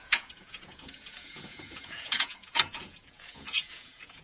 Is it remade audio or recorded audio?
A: remade